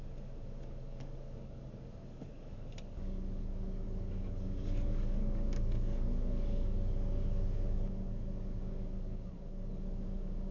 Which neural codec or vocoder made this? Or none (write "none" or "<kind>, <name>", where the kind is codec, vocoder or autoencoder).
codec, DAC